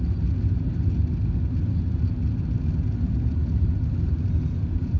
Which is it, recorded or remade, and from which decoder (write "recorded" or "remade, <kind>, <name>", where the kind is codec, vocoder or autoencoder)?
recorded